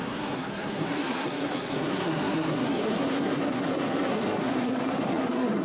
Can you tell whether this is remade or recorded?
remade